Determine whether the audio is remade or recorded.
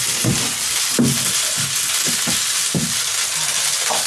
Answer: recorded